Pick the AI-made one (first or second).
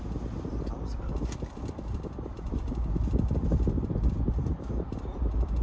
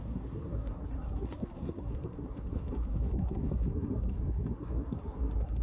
second